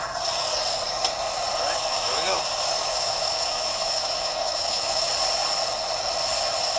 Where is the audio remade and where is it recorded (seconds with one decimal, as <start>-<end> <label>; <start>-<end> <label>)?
0.0-1.9 recorded; 1.9-2.4 remade; 2.4-2.8 recorded; 2.8-5.1 remade; 5.1-6.8 recorded